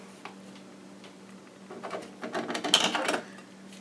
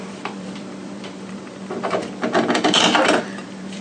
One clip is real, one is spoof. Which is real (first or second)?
first